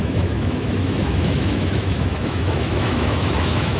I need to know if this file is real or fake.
fake